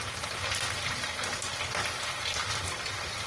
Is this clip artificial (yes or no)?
no